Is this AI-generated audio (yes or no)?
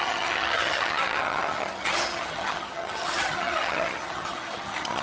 yes